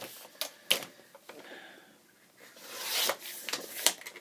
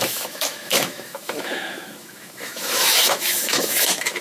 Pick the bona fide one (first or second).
first